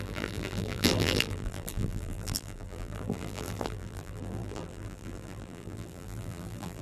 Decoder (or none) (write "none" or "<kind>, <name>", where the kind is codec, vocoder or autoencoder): vocoder, BigVGAN v2